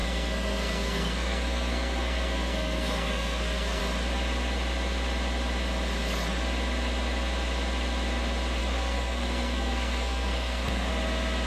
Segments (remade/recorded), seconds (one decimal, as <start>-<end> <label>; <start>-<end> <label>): 0.0-3.8 remade; 3.8-8.6 recorded; 8.6-10.9 remade; 10.9-11.5 recorded